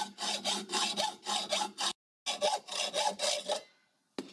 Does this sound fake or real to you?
real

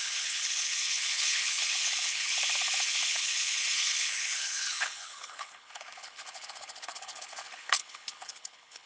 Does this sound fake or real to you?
fake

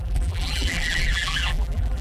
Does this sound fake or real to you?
fake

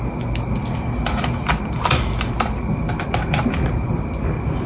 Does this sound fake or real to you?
real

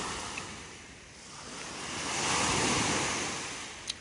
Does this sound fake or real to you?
real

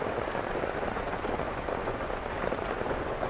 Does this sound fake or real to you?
fake